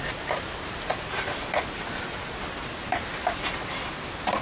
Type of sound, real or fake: real